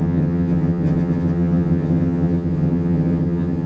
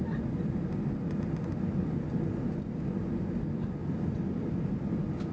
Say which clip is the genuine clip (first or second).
second